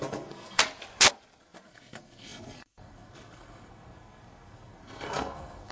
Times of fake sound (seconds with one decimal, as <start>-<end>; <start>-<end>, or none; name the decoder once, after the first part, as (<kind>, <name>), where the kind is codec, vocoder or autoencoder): 0.0-0.6 (codec, SNAC); 1.4-5.7